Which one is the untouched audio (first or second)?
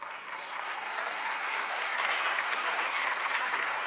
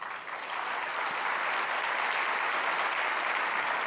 second